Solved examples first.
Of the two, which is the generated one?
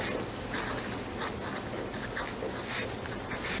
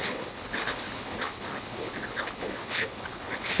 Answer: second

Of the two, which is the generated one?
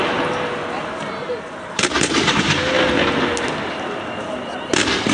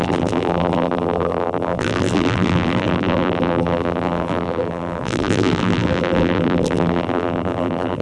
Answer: second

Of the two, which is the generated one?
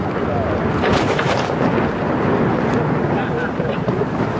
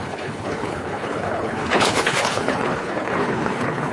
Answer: second